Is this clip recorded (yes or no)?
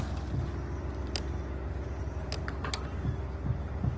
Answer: yes